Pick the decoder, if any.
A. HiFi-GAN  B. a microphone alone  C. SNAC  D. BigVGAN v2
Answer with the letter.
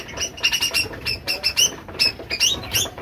D